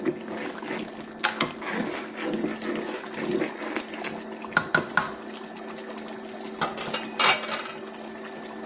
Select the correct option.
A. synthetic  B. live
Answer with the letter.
B